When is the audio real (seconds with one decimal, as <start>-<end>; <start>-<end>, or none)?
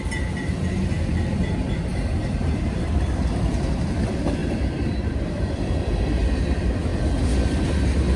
4.4-5.1